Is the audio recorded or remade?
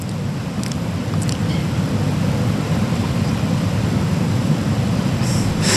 remade